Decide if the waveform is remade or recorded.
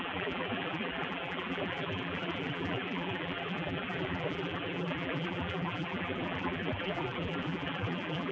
remade